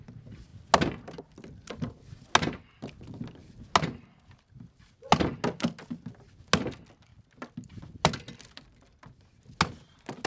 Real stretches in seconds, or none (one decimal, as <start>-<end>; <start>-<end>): 0.0-10.3